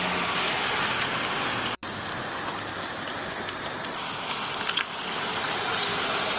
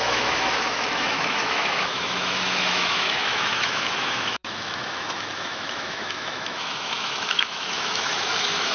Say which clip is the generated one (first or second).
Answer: second